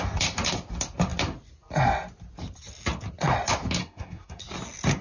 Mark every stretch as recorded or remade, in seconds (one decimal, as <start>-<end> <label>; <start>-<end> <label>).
0.0-3.8 recorded; 3.8-4.4 remade; 4.4-5.0 recorded